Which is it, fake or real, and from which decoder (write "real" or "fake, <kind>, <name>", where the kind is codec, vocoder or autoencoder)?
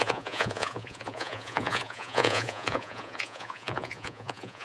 fake, vocoder, Vocos